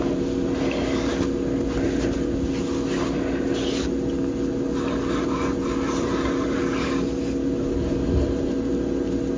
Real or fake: real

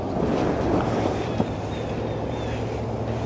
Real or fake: real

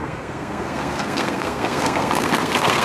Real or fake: fake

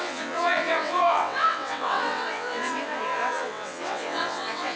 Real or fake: fake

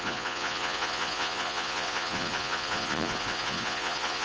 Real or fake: fake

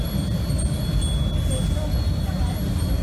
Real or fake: real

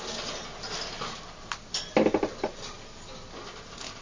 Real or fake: real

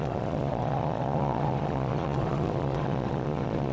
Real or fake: fake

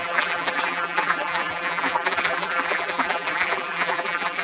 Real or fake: fake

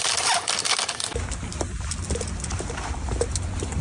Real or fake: real